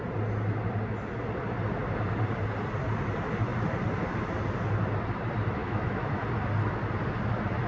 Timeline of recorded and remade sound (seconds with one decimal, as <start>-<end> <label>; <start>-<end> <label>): 0.0-5.6 recorded; 5.6-6.2 remade; 6.2-7.7 recorded